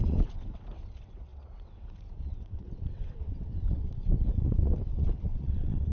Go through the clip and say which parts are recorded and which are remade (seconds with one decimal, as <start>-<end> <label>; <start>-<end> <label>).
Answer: 0.0-5.9 remade